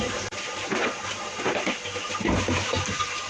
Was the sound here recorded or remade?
recorded